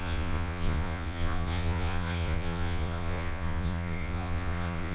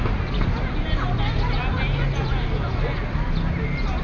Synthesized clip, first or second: first